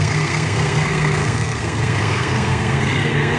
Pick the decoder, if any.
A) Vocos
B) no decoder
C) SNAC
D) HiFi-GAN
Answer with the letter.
C